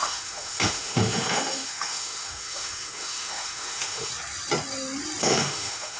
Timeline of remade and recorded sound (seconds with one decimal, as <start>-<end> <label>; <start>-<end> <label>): 0.0-4.1 remade; 4.1-5.2 recorded; 5.2-6.0 remade